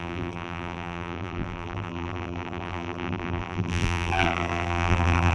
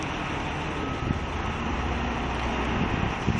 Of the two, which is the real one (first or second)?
second